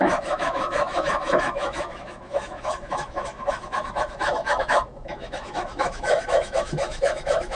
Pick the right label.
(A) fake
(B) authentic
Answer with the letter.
A